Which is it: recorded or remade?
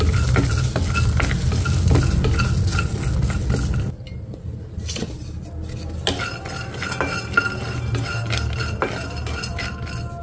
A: recorded